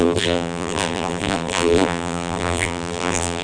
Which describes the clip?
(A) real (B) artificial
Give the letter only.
B